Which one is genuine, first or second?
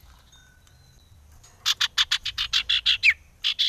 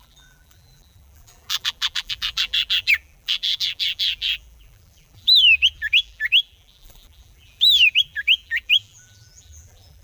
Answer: first